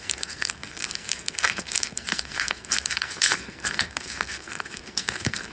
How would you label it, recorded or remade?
remade